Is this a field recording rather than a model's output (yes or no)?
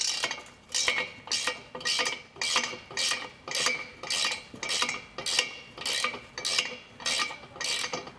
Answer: yes